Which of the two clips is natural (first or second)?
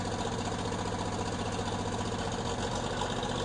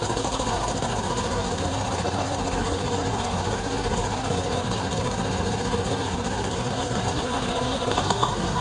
first